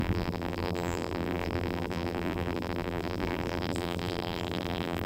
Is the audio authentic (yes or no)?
no